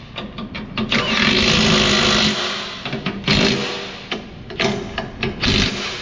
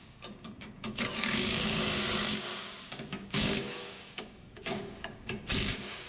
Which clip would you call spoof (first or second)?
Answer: second